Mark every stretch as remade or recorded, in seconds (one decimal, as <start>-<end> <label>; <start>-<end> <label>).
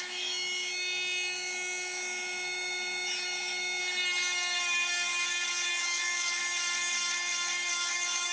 0.0-3.8 remade; 3.8-5.7 recorded; 5.7-6.4 remade; 6.4-7.7 recorded; 7.7-8.3 remade